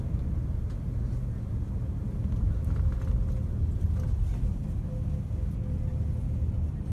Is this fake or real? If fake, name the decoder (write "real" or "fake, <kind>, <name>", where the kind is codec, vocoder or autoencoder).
real